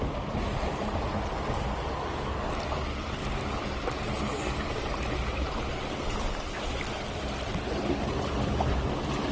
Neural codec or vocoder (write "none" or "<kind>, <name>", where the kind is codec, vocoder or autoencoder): none